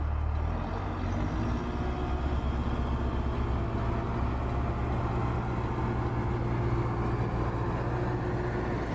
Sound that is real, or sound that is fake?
real